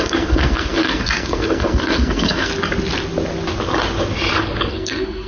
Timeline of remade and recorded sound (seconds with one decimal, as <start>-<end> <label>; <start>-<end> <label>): 0.0-2.5 remade; 2.5-4.7 recorded; 4.7-5.3 remade

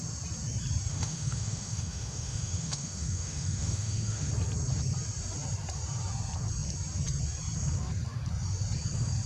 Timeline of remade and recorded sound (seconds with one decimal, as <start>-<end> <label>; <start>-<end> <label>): 0.0-0.9 recorded; 0.9-4.3 remade; 4.3-9.3 recorded

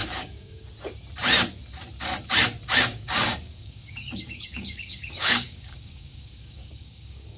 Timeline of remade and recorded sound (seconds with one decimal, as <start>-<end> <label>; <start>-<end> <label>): 0.0-0.7 remade; 0.7-2.9 recorded; 2.9-7.4 remade

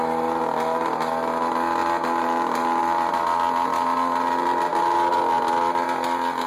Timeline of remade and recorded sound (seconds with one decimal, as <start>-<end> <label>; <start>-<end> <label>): 0.0-6.5 recorded

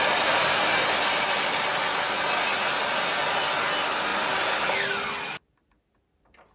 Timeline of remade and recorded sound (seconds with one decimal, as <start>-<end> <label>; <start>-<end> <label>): 0.0-6.5 recorded

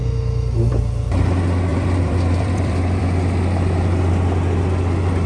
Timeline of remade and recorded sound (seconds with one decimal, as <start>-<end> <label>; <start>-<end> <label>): 0.0-1.7 recorded; 1.7-3.0 remade; 3.0-5.3 recorded

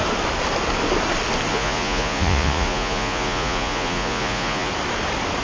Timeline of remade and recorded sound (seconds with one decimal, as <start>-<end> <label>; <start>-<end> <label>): 0.0-1.5 recorded; 1.5-4.7 remade; 4.7-5.4 recorded